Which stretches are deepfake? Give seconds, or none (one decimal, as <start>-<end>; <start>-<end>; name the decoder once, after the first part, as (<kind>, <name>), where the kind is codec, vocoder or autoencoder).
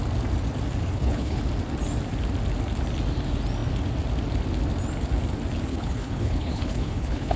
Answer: 0.8-1.4 (codec, HILCodec); 5.7-7.4